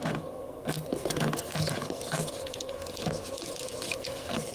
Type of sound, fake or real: fake